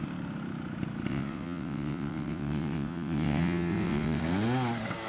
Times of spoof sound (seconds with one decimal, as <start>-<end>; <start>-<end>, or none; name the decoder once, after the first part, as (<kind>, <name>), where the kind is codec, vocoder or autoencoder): 1.1-4.2 (vocoder, WaveNeXt)